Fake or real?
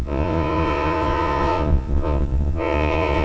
fake